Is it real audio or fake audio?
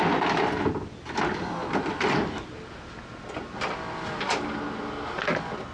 real